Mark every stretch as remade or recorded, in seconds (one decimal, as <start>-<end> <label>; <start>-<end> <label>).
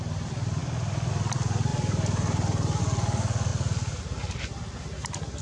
0.0-5.4 recorded